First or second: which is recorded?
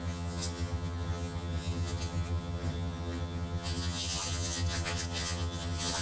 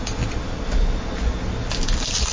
second